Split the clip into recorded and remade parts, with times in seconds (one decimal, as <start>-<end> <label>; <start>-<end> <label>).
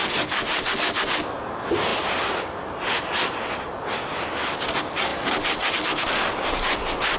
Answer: 0.0-7.2 recorded